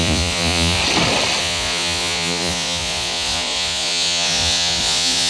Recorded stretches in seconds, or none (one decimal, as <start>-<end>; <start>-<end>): 0.8-1.4